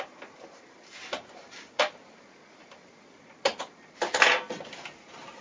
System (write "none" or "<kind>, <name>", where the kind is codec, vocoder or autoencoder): none